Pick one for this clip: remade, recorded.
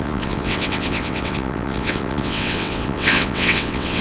remade